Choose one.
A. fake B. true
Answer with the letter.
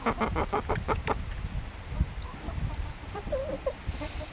B